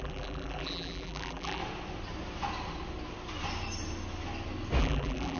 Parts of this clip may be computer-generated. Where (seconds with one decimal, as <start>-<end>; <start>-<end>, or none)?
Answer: 0.0-1.6; 4.8-5.4

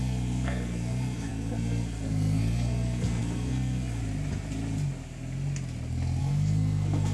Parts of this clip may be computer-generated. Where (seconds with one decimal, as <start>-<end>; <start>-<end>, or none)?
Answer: 0.0-4.0; 6.2-7.1

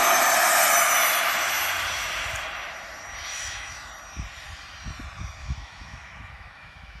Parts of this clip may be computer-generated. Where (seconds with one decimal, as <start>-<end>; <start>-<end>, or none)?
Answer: 3.3-3.9; 5.4-7.0

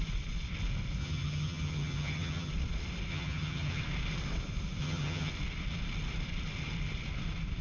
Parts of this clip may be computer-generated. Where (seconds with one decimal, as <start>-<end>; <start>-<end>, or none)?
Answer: 1.0-2.5; 3.1-3.8; 4.8-5.3